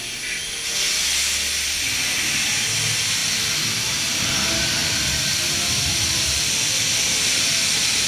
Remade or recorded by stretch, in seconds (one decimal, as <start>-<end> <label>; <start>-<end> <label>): 0.0-3.2 recorded; 3.2-4.3 remade; 4.3-8.1 recorded